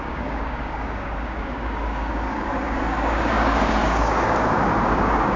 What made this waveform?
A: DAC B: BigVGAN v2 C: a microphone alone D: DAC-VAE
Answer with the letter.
A